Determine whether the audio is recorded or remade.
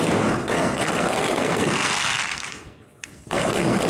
remade